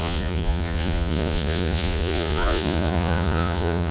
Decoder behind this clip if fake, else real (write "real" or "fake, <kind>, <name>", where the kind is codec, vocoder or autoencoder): fake, vocoder, Vocos